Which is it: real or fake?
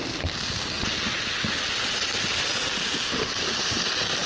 real